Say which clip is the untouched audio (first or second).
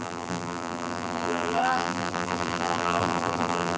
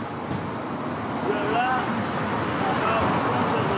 second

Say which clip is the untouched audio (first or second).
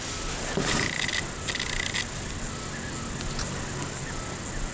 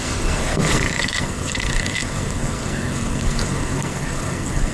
first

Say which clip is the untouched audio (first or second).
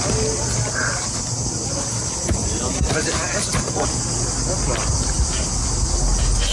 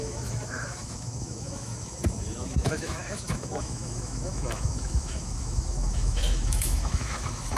first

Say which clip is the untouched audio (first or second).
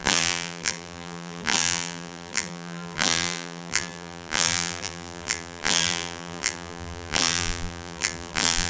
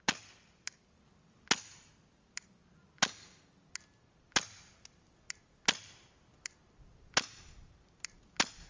second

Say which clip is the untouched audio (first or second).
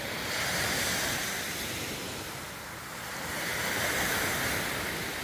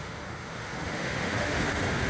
first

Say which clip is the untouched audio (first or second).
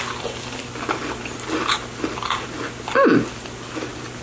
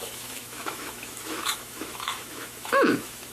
first